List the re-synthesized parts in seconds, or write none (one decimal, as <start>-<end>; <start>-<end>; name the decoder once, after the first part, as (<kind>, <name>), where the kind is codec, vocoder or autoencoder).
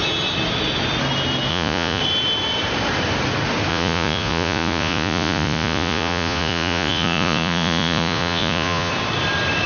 1.5-2.0 (vocoder, Vocos); 3.7-8.9